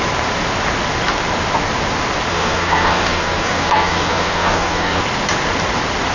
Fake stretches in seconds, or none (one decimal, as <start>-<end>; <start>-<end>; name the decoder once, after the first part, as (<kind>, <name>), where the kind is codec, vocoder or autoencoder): 2.3-5.0 (codec, DAC)